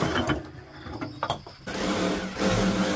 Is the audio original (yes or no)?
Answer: yes